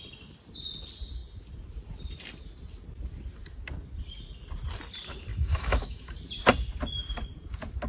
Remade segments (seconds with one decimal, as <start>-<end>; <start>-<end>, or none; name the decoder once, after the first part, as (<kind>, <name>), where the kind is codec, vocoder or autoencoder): 5.3-6.1 (autoencoder, DAC-VAE)

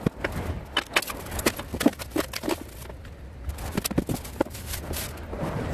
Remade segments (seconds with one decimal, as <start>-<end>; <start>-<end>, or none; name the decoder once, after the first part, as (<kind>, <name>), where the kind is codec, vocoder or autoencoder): none

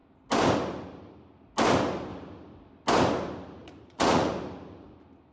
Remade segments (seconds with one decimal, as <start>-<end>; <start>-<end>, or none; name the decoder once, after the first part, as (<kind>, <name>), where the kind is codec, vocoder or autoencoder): 3.6-4.3 (vocoder, Vocos)

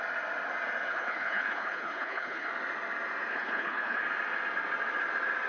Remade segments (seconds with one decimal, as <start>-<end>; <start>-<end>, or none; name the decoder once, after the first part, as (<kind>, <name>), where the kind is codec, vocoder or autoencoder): 0.9-2.5 (codec, HILCodec); 3.3-4.0

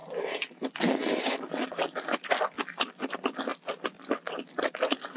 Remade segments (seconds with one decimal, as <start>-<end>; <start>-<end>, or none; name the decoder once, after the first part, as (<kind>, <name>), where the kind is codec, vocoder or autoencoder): none

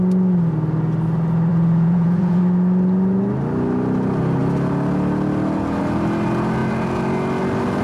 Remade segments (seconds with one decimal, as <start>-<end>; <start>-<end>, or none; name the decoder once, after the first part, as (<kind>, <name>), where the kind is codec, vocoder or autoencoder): 1.5-2.4 (vocoder, Vocos)

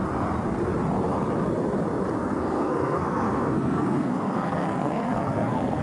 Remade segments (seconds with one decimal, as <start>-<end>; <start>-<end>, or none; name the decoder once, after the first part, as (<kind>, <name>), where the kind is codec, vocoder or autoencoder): 2.2-5.8 (codec, SNAC)